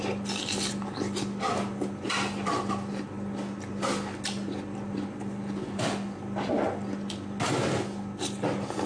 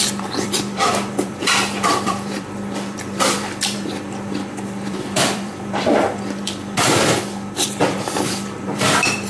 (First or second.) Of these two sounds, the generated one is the second